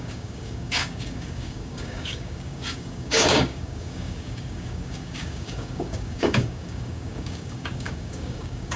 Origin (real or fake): fake